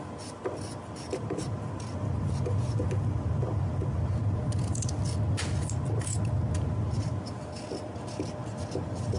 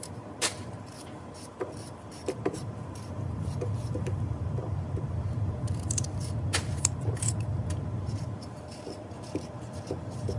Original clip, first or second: first